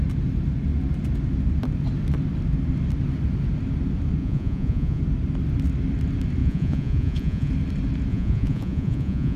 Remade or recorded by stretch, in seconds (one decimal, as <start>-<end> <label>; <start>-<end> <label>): 0.0-4.2 recorded; 4.2-5.0 remade; 5.0-6.4 recorded; 6.4-7.5 remade; 7.5-8.1 recorded; 8.1-9.4 remade